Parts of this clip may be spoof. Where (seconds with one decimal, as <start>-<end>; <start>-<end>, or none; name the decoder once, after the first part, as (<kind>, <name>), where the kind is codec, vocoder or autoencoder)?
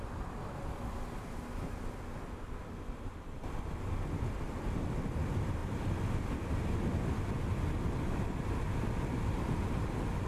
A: none